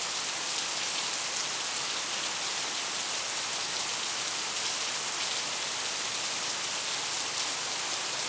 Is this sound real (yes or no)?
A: yes